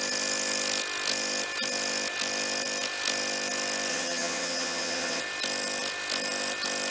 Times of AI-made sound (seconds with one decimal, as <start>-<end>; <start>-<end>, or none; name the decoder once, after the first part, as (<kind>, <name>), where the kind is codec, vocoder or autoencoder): 3.9-5.2 (vocoder, HiFi-GAN)